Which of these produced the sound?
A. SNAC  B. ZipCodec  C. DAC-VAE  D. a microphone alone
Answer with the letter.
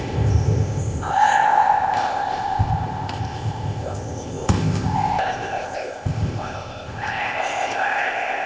B